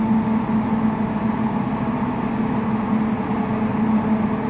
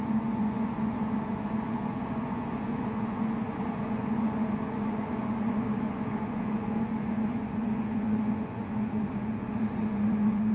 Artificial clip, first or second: second